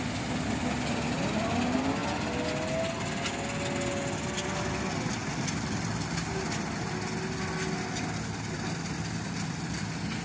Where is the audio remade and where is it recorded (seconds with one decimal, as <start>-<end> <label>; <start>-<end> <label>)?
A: 0.0-10.2 recorded